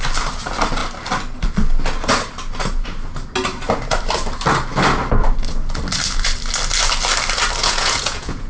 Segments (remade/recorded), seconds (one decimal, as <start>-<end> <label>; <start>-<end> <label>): 0.0-7.6 recorded; 7.6-8.5 remade